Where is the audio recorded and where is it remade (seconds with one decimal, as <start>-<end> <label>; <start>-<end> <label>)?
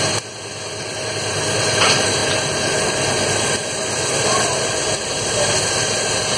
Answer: 0.0-6.4 recorded